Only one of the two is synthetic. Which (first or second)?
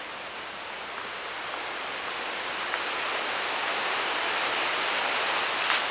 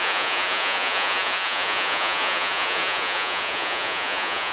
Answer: second